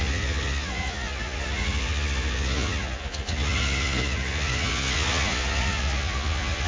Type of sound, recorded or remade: remade